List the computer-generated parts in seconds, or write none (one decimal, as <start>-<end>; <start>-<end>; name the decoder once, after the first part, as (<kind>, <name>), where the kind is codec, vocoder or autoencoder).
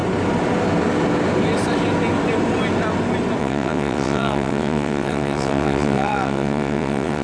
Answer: 3.4-7.2 (vocoder, WaveNeXt)